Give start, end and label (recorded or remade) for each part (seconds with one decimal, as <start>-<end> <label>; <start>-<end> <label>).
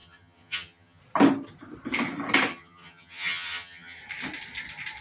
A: 0.0-1.0 remade; 1.0-2.5 recorded; 2.5-4.0 remade; 4.0-5.0 recorded